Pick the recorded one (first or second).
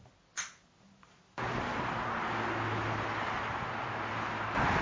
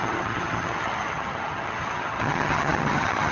first